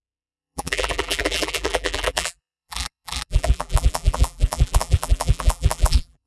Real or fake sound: fake